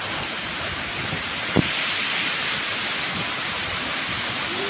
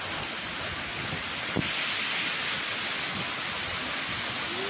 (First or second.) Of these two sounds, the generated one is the first